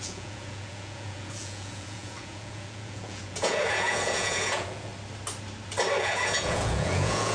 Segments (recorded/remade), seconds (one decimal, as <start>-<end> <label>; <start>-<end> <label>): 0.0-4.9 remade; 4.9-6.0 recorded; 6.0-7.3 remade